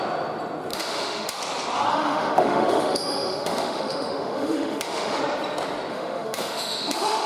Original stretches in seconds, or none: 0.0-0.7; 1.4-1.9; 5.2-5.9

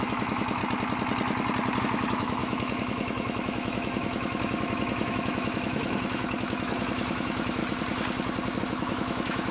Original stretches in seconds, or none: 0.6-1.8; 7.6-8.6